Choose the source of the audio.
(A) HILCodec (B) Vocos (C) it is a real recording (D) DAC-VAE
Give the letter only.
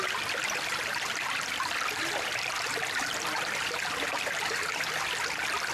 C